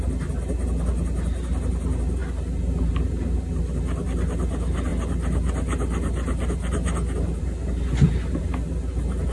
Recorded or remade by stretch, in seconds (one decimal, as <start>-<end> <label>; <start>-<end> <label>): 0.0-9.3 recorded